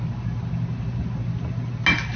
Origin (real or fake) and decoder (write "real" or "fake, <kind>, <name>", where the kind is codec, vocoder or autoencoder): real